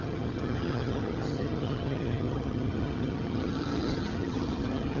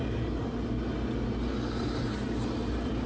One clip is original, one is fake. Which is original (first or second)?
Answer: second